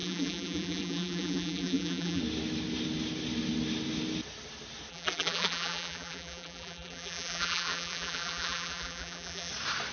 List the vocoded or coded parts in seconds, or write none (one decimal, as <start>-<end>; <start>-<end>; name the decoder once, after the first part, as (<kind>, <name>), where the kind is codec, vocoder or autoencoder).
0.0-2.2 (vocoder, BigVGAN v2); 4.9-9.5